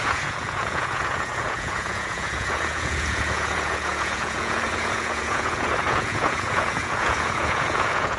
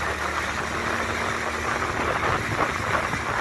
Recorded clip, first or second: second